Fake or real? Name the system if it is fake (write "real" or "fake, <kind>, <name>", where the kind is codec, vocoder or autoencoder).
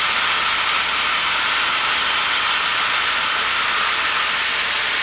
real